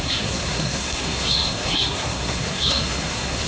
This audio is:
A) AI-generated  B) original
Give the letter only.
A